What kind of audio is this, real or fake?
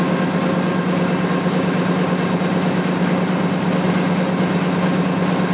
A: real